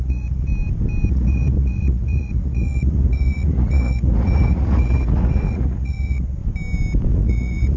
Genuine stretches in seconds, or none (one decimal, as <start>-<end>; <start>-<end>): 0.5-1.1; 6.4-7.1